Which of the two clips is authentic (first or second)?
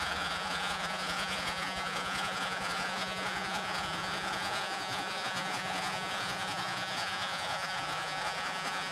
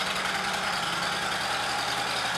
second